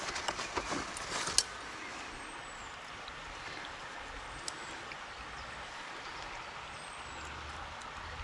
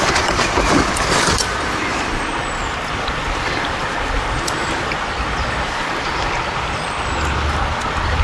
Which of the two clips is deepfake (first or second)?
second